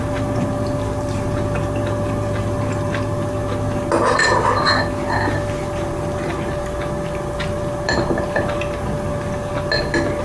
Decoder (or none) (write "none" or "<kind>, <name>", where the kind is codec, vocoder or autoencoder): none